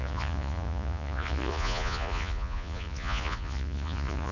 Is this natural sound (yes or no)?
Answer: no